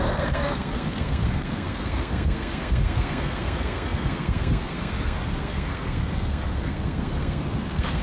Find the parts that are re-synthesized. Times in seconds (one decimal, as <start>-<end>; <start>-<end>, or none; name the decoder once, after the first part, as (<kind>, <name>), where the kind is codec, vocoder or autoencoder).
0.0-8.0 (codec, SNAC)